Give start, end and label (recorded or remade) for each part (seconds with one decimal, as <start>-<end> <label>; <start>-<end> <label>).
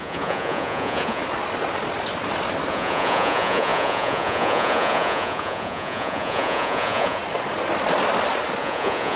0.0-1.2 remade; 1.2-2.7 recorded; 2.7-7.2 remade; 7.2-8.6 recorded; 8.6-9.2 remade